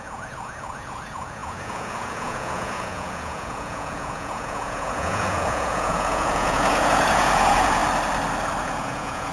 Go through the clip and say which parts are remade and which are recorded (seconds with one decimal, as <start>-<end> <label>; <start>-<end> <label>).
0.0-7.8 remade; 7.8-8.6 recorded; 8.6-9.3 remade